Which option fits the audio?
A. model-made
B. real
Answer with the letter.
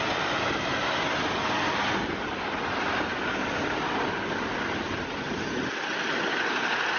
B